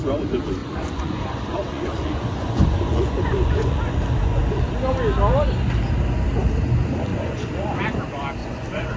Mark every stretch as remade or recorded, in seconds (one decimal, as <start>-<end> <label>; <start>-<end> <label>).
0.0-0.6 recorded; 0.6-4.7 remade; 4.7-7.1 recorded; 7.1-7.8 remade; 7.8-8.4 recorded; 8.4-9.0 remade